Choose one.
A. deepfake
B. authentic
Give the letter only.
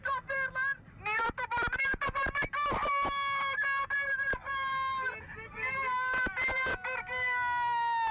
B